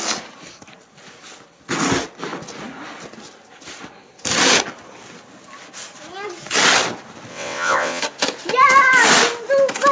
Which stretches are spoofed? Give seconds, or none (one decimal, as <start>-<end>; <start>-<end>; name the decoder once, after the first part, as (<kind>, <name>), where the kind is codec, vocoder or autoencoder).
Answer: 7.3-8.0 (vocoder, WaveNeXt)